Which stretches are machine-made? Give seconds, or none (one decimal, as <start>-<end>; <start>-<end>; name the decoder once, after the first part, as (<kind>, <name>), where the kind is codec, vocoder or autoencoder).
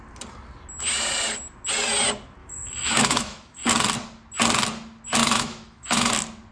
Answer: 2.4-3.7 (autoencoder, DAC-VAE); 5.2-6.1